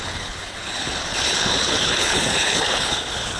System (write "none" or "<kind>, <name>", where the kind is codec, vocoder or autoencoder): codec, HILCodec